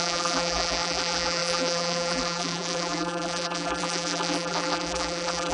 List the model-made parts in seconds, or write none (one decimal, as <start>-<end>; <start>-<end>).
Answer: 0.0-5.5